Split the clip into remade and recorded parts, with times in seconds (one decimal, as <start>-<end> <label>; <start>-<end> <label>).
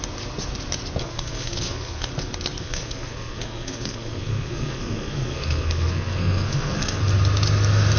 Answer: 0.0-1.0 recorded; 1.0-2.1 remade; 2.1-2.6 recorded; 2.6-7.0 remade; 7.0-8.0 recorded